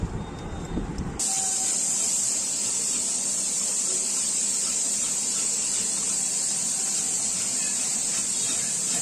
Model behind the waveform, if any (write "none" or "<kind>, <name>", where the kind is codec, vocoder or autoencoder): vocoder, BigVGAN v2